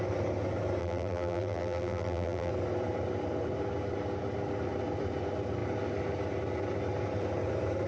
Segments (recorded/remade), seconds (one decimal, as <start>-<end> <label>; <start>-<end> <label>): 0.0-0.8 recorded; 0.8-2.5 remade; 2.5-7.9 recorded